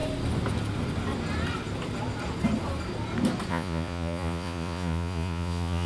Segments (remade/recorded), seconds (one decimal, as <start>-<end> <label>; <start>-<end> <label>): 0.0-3.5 recorded; 3.5-5.9 remade